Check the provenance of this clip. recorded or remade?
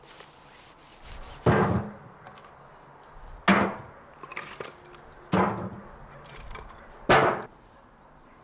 recorded